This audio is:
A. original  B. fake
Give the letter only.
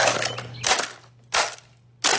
A